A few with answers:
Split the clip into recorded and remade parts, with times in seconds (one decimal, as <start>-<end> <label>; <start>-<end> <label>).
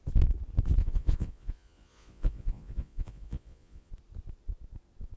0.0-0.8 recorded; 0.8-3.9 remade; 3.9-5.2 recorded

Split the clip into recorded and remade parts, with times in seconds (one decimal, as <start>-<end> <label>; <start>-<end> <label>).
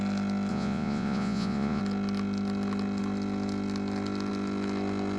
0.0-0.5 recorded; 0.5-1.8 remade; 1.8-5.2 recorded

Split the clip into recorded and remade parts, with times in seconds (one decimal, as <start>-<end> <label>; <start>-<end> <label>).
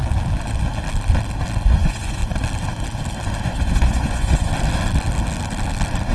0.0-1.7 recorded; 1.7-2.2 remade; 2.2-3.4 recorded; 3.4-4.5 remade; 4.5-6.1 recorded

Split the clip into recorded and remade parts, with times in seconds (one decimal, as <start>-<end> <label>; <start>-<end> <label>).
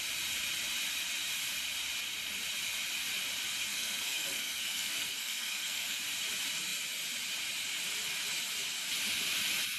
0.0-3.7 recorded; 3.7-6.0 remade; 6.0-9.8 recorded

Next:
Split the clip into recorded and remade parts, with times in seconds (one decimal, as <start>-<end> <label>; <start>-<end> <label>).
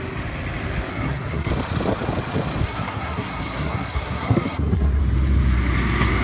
0.0-0.9 recorded; 0.9-1.5 remade; 1.5-2.6 recorded; 2.6-5.0 remade; 5.0-6.2 recorded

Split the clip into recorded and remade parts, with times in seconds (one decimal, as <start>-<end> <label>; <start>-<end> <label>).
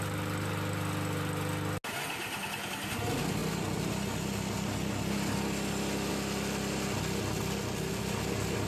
0.0-8.7 recorded